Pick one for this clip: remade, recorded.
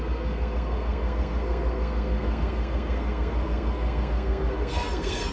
remade